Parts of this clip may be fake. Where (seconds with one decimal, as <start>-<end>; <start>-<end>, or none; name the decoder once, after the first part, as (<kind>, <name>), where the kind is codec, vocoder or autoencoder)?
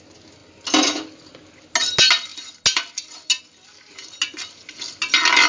none